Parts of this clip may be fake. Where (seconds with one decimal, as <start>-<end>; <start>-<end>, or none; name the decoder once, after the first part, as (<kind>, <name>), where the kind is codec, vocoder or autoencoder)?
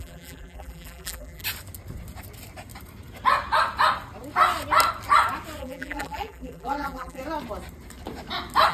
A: 0.0-1.4 (vocoder, BigVGAN v2); 5.6-7.2